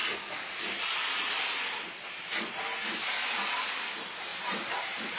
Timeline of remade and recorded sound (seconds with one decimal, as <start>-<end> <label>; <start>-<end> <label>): 0.0-2.6 recorded; 2.6-5.2 remade